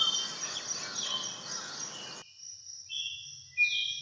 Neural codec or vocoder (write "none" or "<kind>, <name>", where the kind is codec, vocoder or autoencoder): none